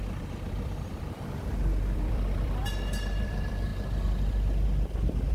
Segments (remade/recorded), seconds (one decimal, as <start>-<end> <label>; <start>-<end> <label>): 0.0-2.6 remade; 2.6-3.2 recorded; 3.2-3.7 remade; 3.7-5.3 recorded